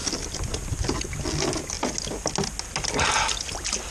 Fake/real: real